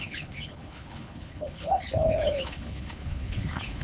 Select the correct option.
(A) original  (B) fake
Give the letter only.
B